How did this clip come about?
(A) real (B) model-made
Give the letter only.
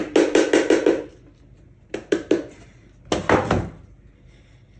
A